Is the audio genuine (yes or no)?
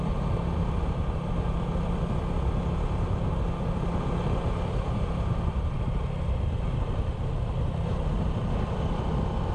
yes